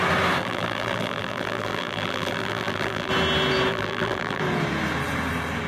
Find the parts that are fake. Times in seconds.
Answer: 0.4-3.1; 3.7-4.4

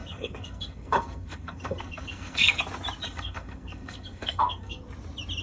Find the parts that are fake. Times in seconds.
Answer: 0.0-2.6; 3.0-4.8

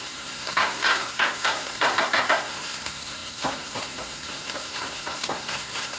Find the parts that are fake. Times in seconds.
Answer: 0.0-6.0

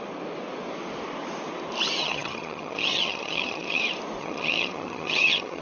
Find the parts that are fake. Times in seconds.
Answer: 2.0-3.8; 4.2-5.6

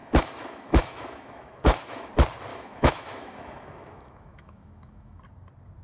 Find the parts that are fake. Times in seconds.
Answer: 0.0-2.1; 2.5-5.2

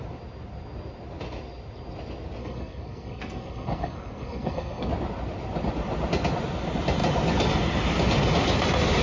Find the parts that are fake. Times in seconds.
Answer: 2.4-4.9

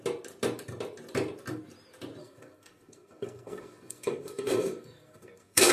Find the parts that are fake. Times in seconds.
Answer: 2.2-5.7